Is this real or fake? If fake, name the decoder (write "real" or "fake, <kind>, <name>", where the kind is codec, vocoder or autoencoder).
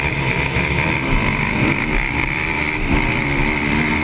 real